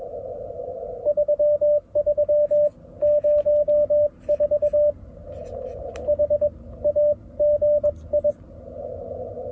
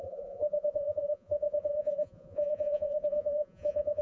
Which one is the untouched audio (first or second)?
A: first